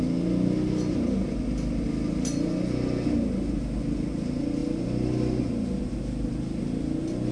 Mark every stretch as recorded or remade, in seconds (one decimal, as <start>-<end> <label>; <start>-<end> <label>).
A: 0.0-7.3 recorded